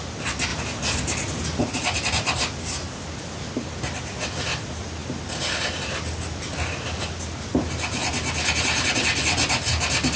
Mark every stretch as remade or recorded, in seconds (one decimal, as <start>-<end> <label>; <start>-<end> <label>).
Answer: 0.0-10.2 recorded